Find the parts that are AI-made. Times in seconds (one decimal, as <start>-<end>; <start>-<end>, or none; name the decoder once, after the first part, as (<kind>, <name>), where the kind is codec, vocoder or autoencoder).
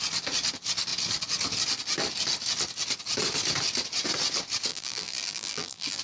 4.7-6.0 (vocoder, BigVGAN v2)